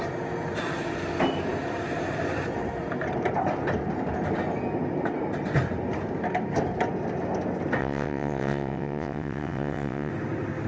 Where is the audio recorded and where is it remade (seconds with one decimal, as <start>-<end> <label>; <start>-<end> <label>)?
0.0-7.8 recorded; 7.8-10.1 remade; 10.1-10.7 recorded